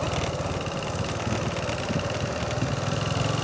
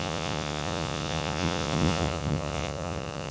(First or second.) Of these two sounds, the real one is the first